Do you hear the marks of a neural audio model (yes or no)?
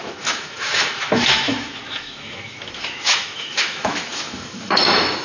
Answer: yes